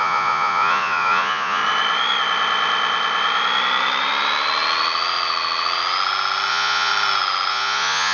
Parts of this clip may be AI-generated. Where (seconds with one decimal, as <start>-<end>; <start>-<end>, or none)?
0.0-1.6; 6.5-6.9; 7.5-8.1